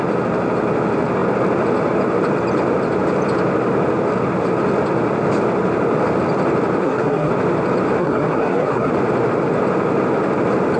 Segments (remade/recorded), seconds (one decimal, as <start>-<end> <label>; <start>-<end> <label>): 0.0-6.8 recorded; 6.8-7.3 remade; 7.3-8.0 recorded; 8.0-8.9 remade; 8.9-10.8 recorded